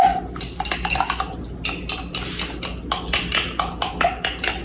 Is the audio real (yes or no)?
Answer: yes